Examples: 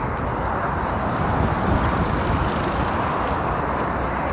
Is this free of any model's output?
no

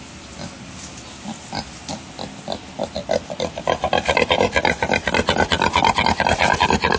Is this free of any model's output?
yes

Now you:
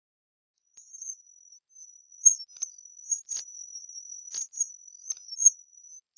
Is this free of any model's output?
yes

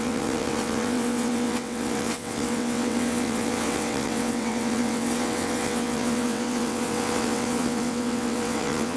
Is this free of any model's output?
no